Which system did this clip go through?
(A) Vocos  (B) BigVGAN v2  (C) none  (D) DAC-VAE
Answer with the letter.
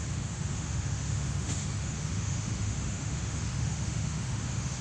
D